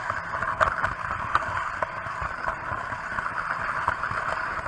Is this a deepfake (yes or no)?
no